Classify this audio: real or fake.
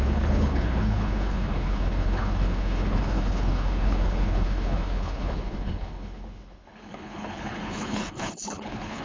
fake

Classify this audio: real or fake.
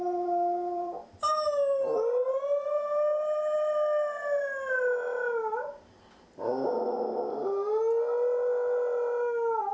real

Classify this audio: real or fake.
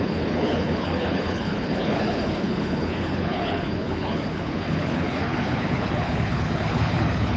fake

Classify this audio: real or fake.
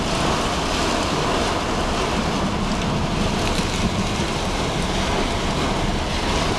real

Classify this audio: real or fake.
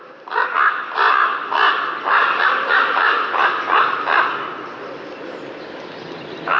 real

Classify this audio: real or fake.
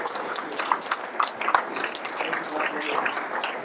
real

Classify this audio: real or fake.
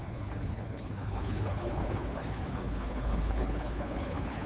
fake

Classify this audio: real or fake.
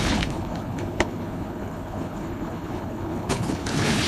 fake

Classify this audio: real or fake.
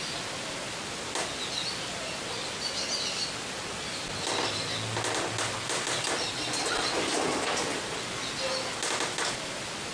real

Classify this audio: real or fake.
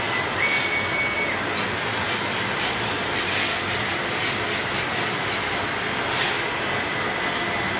real